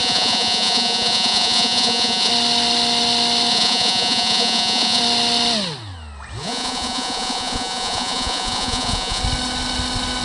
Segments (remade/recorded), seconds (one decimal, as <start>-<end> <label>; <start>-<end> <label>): 0.0-2.3 remade; 2.3-3.5 recorded; 3.5-5.0 remade; 5.0-6.4 recorded; 6.4-9.2 remade; 9.2-10.2 recorded